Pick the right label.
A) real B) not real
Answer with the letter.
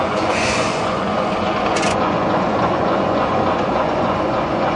B